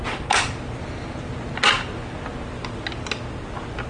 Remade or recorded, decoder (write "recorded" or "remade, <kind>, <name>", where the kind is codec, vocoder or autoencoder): recorded